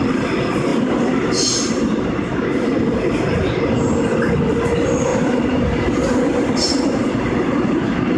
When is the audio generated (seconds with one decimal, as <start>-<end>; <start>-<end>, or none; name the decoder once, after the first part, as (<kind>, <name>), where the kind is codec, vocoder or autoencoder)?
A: none